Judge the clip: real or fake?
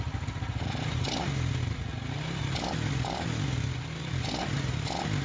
real